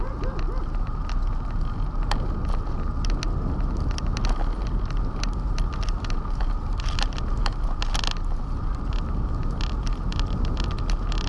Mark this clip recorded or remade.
recorded